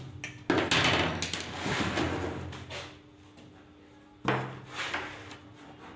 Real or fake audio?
real